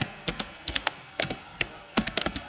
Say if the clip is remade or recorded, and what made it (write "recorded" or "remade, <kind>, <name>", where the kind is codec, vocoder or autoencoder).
remade, codec, SNAC